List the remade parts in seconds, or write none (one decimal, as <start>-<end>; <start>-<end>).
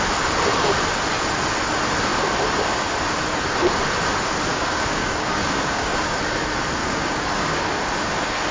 4.5-6.2; 6.8-7.6